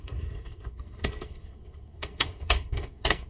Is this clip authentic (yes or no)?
no